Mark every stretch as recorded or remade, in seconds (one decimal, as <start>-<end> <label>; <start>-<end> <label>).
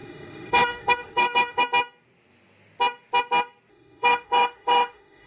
0.0-1.6 remade; 1.6-3.7 recorded; 3.7-5.3 remade